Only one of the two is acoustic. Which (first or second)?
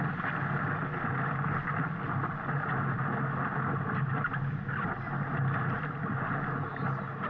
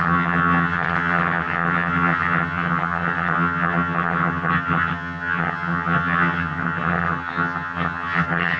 first